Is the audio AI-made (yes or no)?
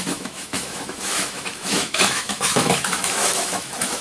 yes